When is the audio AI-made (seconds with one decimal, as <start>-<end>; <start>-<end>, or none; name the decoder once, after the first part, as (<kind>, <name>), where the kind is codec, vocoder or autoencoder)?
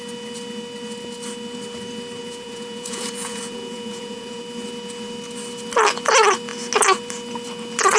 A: 2.2-4.4 (vocoder, Vocos)